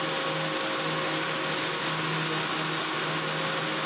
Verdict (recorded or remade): recorded